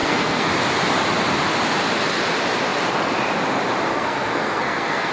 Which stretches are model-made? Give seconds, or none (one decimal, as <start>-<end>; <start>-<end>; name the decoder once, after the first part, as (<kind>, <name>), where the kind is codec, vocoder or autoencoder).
0.0-0.5 (codec, SNAC); 3.9-5.1